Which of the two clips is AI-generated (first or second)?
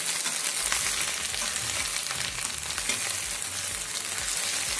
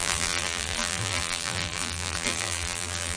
second